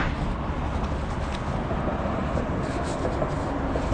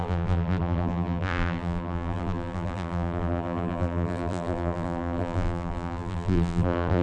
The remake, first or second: second